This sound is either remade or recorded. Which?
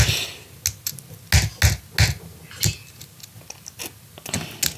recorded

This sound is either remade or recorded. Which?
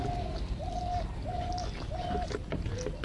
recorded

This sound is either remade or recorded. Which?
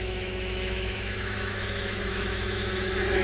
remade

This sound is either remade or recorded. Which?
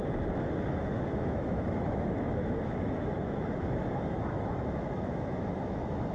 remade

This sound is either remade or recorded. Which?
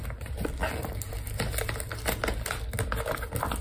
recorded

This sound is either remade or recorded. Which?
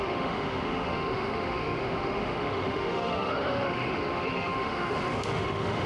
remade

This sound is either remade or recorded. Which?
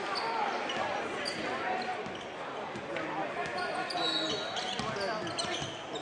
recorded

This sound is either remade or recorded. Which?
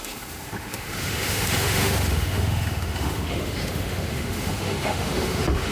remade